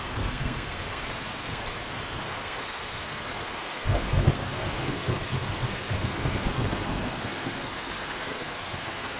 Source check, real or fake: fake